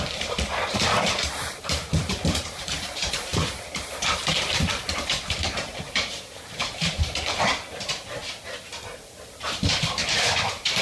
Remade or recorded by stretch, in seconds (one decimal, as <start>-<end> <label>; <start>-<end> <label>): 0.0-8.2 remade; 8.2-9.4 recorded; 9.4-10.8 remade